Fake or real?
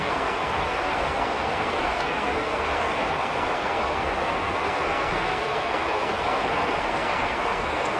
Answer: fake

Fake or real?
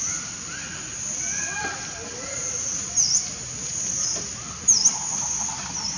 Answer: real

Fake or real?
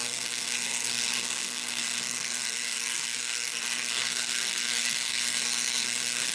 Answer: fake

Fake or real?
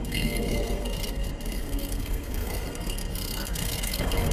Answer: fake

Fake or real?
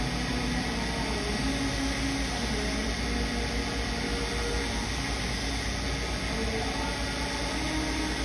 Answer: real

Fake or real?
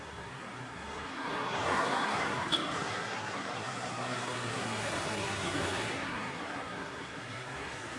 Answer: fake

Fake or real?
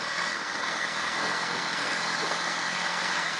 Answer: fake